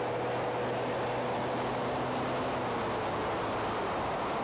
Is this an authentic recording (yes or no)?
yes